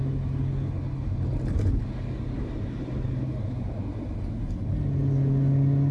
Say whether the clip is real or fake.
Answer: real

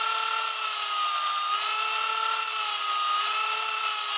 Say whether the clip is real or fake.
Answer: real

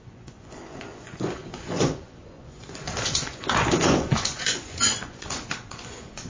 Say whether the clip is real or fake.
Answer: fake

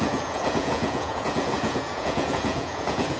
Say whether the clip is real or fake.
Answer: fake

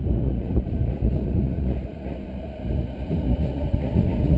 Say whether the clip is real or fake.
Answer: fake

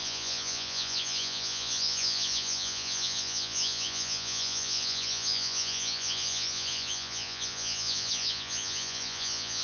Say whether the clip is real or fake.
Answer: fake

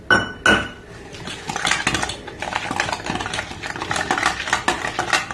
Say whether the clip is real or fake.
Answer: real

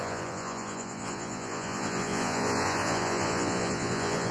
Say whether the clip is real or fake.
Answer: fake